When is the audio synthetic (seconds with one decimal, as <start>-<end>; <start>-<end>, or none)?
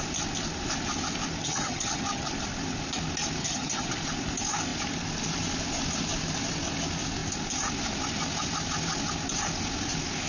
1.4-2.3; 3.4-3.9